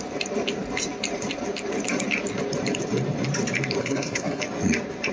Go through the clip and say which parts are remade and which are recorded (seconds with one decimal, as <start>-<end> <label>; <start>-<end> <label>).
0.0-3.8 recorded; 3.8-4.4 remade; 4.4-5.1 recorded